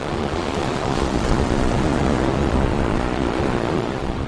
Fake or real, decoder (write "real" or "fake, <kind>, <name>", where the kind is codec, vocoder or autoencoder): fake, vocoder, Vocos